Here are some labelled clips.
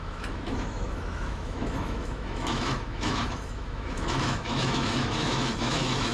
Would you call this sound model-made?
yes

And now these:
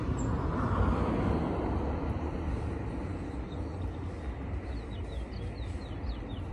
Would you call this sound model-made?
no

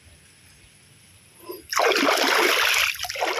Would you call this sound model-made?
no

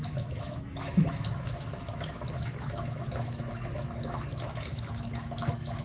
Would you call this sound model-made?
yes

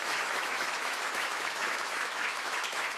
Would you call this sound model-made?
yes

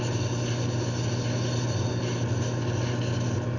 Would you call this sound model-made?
no